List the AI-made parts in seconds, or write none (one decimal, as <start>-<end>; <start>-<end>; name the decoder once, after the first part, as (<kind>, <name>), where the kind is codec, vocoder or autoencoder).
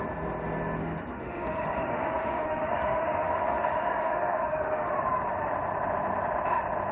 0.8-4.9 (autoencoder, DAC-VAE)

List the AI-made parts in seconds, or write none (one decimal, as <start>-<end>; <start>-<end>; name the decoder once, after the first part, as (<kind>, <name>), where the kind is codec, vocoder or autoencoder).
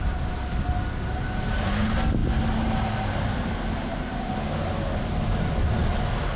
none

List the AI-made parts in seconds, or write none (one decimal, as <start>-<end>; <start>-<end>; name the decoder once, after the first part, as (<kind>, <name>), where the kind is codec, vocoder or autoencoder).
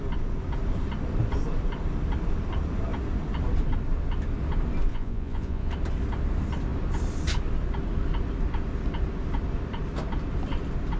4.9-5.7 (vocoder, Vocos)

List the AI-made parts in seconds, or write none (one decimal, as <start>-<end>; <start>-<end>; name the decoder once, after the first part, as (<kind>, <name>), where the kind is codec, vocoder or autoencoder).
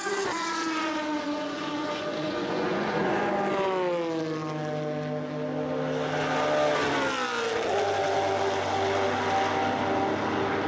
0.0-3.3 (vocoder, Vocos)